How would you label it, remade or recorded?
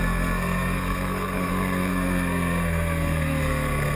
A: remade